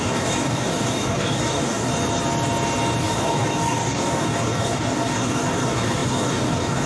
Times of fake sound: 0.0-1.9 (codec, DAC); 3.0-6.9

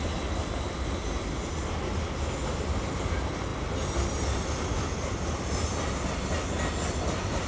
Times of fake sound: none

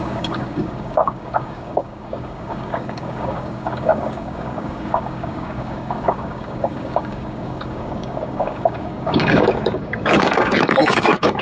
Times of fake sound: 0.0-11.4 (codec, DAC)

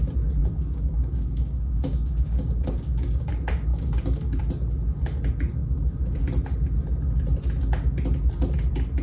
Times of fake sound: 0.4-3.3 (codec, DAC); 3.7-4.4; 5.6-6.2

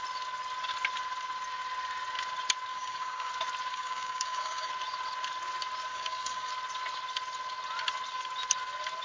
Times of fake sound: 2.7-3.3 (codec, DAC); 3.7-4.7; 5.9-6.5

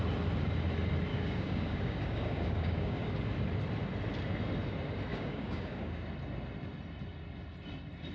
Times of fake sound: 1.1-3.1 (codec, DAC); 5.1-6.0

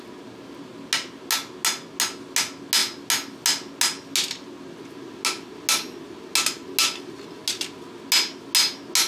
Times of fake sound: none